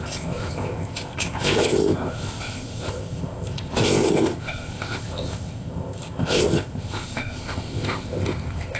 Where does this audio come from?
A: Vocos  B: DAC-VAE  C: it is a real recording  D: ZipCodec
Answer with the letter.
D